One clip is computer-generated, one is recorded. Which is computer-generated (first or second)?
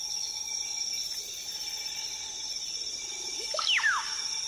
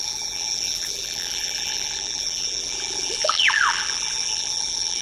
second